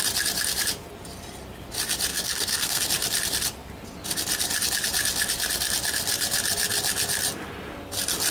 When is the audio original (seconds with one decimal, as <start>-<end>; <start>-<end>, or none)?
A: 0.0-2.1; 2.8-8.3